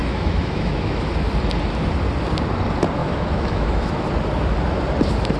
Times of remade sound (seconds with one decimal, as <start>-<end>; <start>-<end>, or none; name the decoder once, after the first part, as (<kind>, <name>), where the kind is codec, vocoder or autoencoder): 0.0-1.1 (autoencoder, DAC-VAE); 3.0-4.1